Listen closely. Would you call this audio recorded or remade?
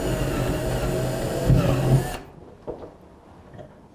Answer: recorded